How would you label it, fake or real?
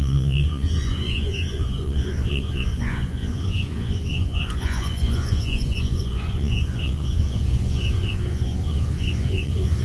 fake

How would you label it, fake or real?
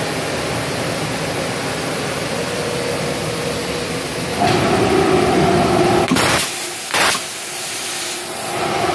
real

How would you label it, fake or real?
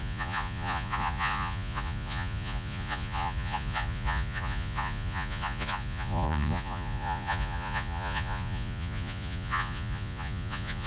fake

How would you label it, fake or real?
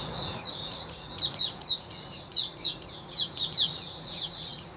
fake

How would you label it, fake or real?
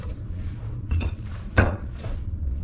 fake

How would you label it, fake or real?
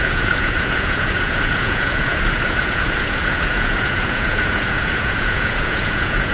fake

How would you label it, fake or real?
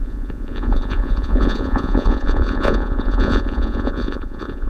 fake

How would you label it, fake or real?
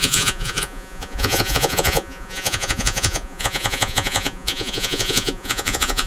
fake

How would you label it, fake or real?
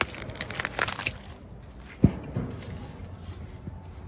real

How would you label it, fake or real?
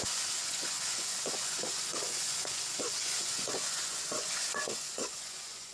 fake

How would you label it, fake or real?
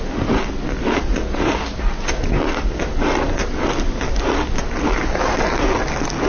real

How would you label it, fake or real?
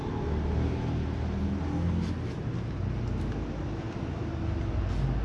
real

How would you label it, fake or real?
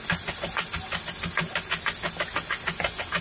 real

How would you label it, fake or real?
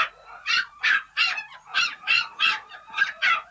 fake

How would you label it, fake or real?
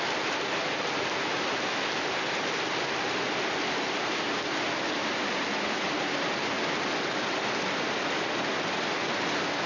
real